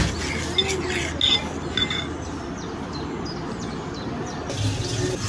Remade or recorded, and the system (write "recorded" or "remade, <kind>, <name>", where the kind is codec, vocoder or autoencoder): recorded